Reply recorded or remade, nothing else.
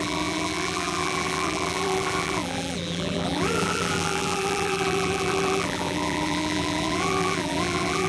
remade